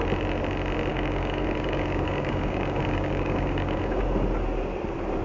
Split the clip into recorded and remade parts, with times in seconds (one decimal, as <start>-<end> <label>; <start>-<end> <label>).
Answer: 0.0-0.9 recorded; 0.9-4.0 remade; 4.0-5.2 recorded